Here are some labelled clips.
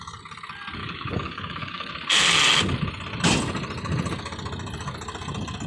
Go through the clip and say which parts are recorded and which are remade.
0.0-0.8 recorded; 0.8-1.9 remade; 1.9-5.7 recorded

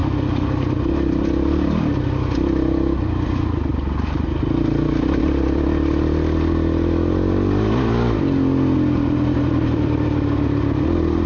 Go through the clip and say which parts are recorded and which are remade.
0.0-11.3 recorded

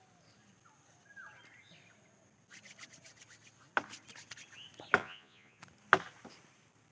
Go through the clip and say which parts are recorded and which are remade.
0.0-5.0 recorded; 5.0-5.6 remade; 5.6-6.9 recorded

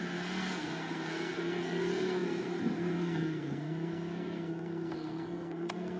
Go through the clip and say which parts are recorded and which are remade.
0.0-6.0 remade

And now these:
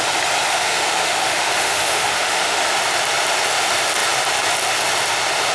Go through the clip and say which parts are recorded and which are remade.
0.0-0.5 recorded; 0.5-2.6 remade; 2.6-5.5 recorded